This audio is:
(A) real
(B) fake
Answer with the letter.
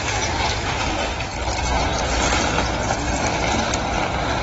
A